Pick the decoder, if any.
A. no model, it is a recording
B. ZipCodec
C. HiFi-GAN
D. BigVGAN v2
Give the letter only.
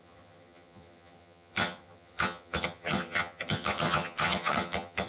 C